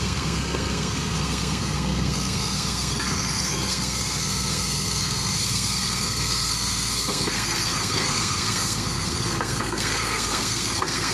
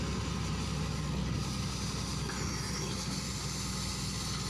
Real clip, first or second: second